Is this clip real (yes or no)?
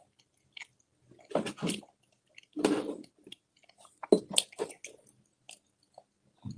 yes